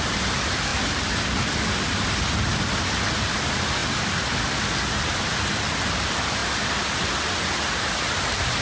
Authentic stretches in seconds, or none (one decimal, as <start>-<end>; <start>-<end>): 0.0-8.6